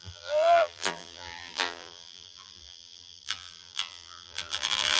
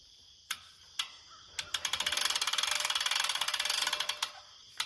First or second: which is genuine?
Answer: second